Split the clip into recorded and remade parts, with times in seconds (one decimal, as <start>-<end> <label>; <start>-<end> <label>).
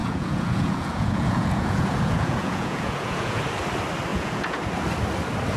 0.0-3.4 remade; 3.4-4.1 recorded; 4.1-4.6 remade; 4.6-5.6 recorded